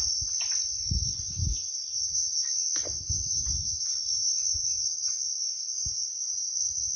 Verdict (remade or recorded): recorded